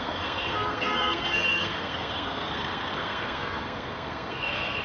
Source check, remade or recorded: remade